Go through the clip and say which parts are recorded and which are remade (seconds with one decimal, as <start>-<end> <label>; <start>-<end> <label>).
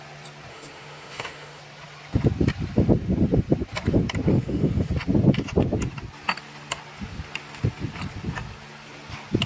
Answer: 0.0-0.5 recorded; 0.5-1.6 remade; 1.6-4.3 recorded; 4.3-4.9 remade; 4.9-9.5 recorded